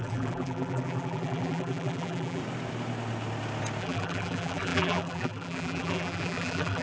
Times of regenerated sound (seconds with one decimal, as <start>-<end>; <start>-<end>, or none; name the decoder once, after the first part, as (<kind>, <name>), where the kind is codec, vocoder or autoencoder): 0.0-2.4 (vocoder, BigVGAN v2); 3.8-6.8